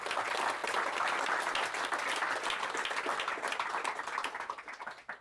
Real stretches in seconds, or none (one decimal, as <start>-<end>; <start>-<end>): 0.0-5.2

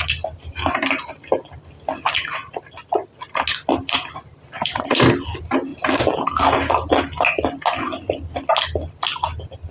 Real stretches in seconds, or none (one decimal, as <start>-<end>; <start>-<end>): 0.0-3.7; 5.1-9.7